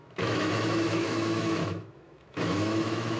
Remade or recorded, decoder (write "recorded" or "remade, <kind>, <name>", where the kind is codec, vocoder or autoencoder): remade, autoencoder, DAC-VAE